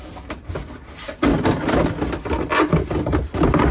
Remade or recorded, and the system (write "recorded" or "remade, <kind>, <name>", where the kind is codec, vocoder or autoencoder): recorded